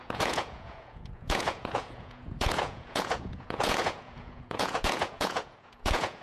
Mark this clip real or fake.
fake